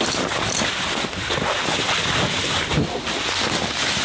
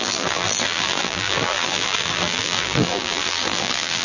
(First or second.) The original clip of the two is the first